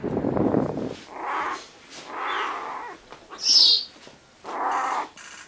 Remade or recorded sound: recorded